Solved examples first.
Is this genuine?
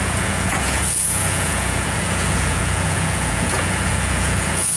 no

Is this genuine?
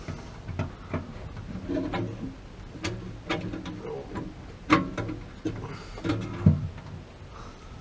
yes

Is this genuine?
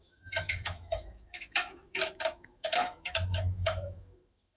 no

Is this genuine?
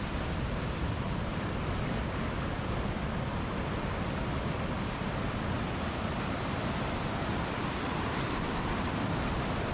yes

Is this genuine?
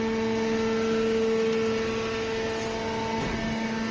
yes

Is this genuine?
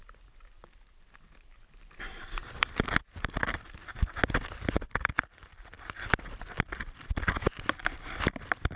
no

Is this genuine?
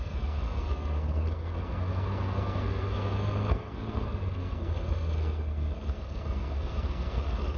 no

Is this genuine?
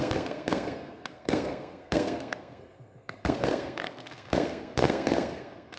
no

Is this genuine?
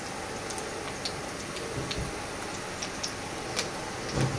yes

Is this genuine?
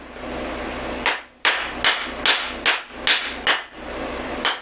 yes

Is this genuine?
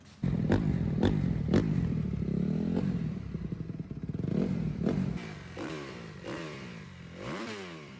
no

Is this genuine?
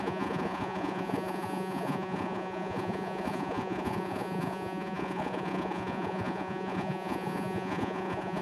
no